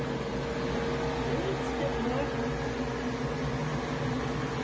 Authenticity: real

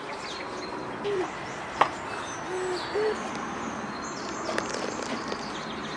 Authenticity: real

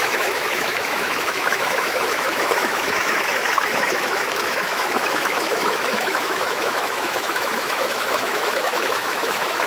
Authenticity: fake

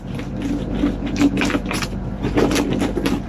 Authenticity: real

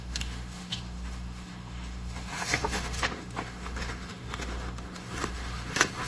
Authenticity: fake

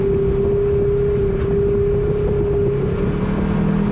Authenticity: real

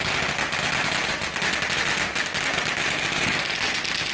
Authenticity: real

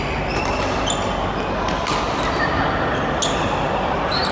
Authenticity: real